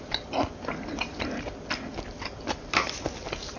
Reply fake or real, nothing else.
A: real